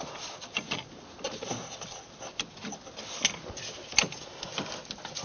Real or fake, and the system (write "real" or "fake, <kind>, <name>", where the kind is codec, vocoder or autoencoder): real